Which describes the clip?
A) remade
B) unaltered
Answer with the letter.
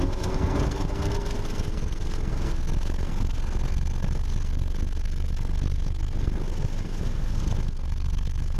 A